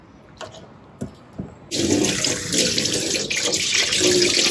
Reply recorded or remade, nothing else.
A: recorded